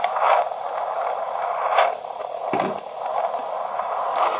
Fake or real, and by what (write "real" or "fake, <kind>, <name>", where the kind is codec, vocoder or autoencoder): fake, vocoder, BigVGAN v2